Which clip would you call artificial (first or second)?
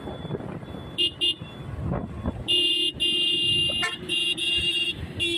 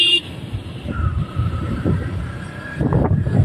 second